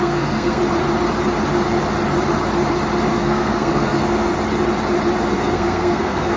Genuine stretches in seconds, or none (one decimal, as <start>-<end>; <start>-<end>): 0.6-3.1; 4.3-5.3